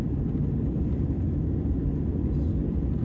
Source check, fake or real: fake